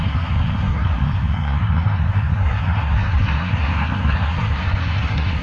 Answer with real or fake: fake